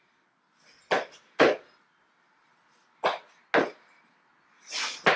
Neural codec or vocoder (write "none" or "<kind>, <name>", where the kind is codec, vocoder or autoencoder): none